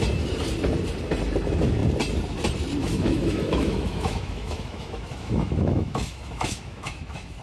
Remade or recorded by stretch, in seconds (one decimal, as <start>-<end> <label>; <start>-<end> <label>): 0.0-2.8 recorded; 2.8-7.4 remade